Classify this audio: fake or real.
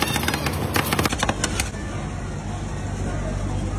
real